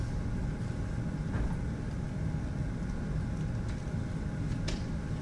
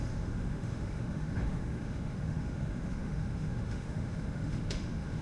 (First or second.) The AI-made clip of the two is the second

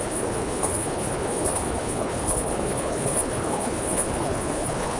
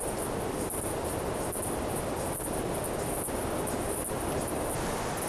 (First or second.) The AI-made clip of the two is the first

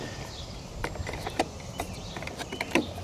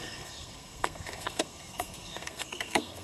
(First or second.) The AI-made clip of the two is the second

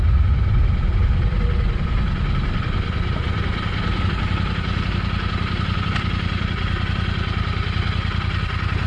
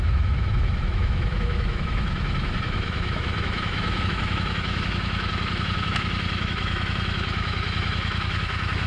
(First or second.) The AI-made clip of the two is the second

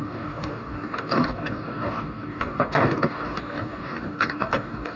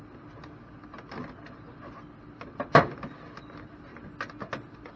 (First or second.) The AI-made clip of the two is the first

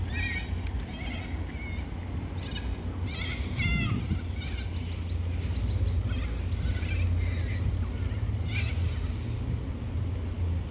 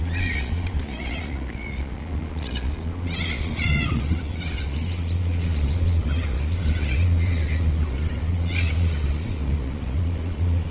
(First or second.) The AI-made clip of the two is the second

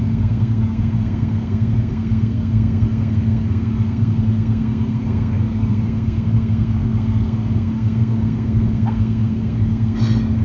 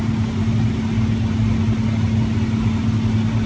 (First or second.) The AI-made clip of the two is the first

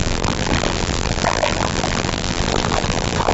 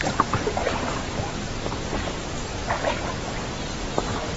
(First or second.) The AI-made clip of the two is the first